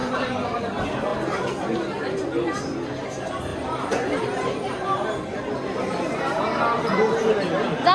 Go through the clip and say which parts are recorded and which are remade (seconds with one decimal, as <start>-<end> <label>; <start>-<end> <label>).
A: 0.0-0.6 remade; 0.6-3.5 recorded; 3.5-5.4 remade; 5.4-7.9 recorded